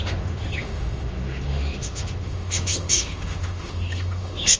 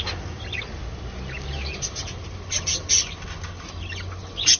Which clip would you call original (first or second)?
second